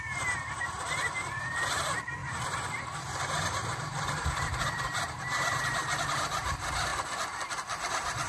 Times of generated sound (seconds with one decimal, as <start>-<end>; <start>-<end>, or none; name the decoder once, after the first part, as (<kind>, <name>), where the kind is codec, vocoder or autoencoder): 0.0-6.9 (vocoder, BigVGAN v2); 7.9-8.3